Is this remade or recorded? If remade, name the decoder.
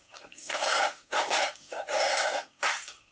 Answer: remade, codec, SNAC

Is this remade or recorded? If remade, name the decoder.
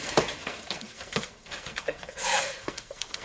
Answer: remade, codec, SNAC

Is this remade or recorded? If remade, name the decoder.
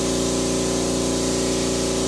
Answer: recorded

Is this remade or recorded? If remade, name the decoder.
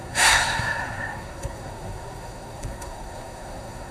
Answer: remade, codec, SNAC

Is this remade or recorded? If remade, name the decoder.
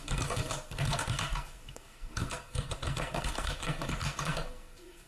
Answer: remade, codec, SNAC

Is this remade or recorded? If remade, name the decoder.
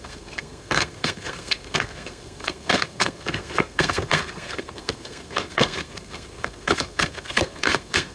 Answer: remade, codec, SNAC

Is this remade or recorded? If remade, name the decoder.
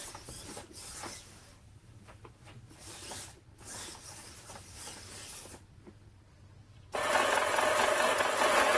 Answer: recorded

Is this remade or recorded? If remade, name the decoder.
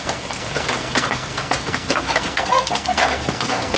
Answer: remade, codec, SNAC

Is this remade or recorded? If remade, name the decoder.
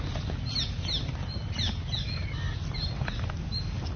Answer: recorded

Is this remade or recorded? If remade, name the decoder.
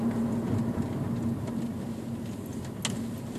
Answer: recorded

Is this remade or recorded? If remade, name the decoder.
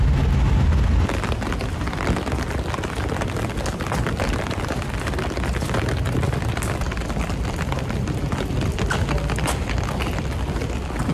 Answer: recorded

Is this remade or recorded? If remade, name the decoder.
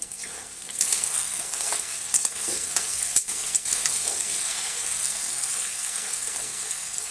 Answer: remade, codec, SNAC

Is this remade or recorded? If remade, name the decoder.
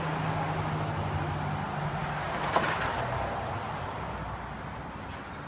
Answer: recorded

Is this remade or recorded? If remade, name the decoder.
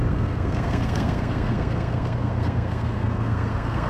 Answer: remade, codec, SNAC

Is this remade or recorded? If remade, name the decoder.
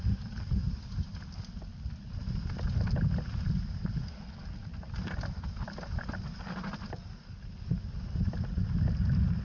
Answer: recorded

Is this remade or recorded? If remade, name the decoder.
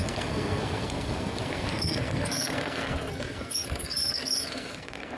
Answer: remade, codec, SNAC